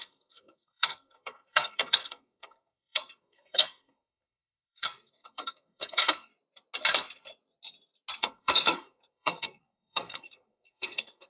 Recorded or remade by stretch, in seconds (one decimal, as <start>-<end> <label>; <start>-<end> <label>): 0.0-6.3 remade; 6.3-8.2 recorded; 8.2-11.3 remade